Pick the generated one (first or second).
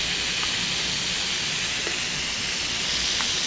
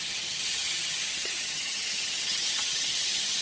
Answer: second